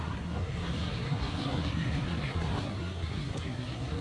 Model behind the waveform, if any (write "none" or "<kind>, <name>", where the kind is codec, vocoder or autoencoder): codec, SNAC